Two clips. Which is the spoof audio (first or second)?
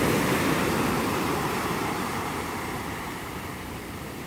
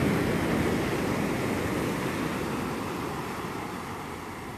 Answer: first